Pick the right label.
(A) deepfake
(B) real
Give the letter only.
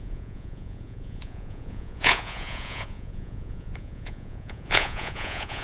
A